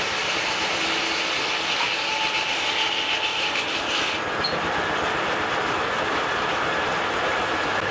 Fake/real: real